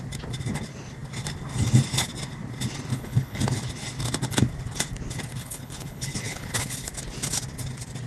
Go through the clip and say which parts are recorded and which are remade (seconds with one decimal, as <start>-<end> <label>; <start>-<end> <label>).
0.0-2.9 recorded; 2.9-3.6 remade; 3.6-5.4 recorded; 5.4-6.9 remade; 6.9-8.1 recorded